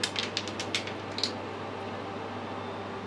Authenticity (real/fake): real